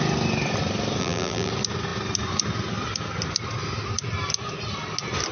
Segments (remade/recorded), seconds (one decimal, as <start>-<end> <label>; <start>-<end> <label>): 0.0-1.0 recorded; 1.0-1.5 remade; 1.5-5.3 recorded